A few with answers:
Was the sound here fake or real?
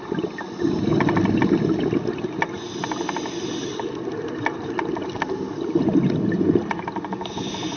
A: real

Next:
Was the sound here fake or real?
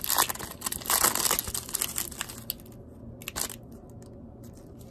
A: real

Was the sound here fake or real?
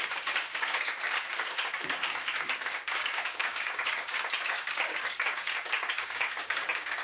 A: fake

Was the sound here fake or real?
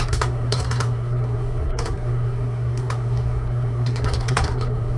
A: fake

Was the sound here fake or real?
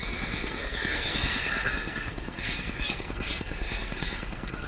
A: fake